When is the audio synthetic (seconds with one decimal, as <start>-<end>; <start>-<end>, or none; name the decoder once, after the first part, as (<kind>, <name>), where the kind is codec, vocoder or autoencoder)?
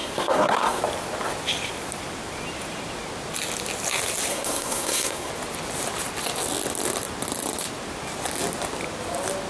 0.0-0.8 (codec, SNAC); 4.3-5.3